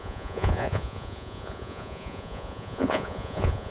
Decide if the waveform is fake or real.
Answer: fake